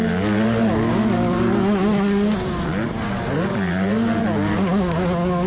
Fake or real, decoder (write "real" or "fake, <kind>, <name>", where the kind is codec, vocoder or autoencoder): real